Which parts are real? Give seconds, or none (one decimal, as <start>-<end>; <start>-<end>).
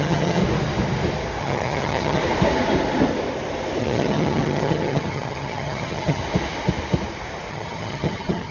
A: 0.4-1.4; 2.2-3.8; 6.2-7.5